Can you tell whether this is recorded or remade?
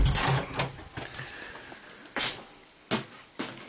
recorded